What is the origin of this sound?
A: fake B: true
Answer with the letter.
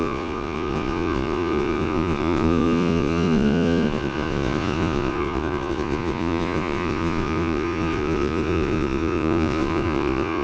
A